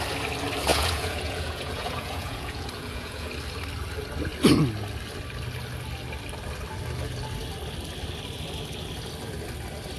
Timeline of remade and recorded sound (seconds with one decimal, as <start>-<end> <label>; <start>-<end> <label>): 0.0-0.7 recorded; 0.7-3.3 remade; 3.3-10.0 recorded